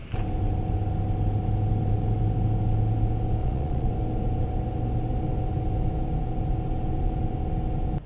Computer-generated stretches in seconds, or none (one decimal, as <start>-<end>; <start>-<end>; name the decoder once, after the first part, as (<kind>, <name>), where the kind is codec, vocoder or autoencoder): 3.4-3.9 (vocoder, Vocos)